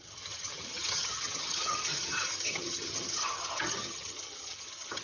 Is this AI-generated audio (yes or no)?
yes